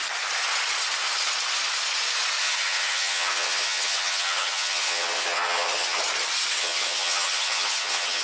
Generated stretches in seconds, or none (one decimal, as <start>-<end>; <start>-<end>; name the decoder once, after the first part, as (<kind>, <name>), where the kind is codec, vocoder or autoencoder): 2.4-6.0 (vocoder, HiFi-GAN); 6.6-8.2